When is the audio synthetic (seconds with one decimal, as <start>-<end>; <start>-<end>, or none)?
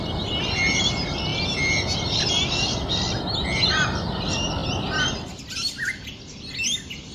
none